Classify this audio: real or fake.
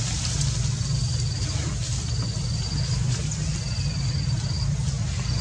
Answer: real